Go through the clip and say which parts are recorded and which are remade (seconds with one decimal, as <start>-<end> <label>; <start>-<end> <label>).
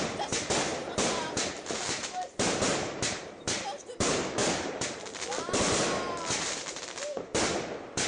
0.0-4.4 remade; 4.4-6.4 recorded; 6.4-7.3 remade; 7.3-8.1 recorded